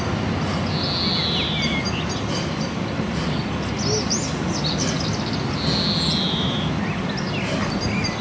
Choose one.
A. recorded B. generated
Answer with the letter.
A